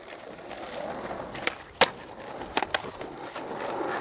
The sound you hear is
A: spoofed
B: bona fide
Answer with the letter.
B